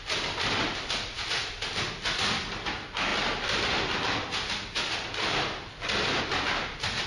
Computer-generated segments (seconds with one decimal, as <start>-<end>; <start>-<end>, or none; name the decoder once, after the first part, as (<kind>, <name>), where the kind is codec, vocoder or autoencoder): none